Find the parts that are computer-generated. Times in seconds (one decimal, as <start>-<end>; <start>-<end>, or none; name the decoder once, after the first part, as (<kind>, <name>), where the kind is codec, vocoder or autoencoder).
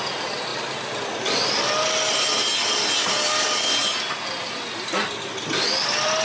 none